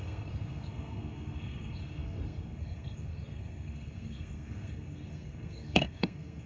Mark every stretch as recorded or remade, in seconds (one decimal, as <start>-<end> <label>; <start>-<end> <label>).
0.0-6.5 remade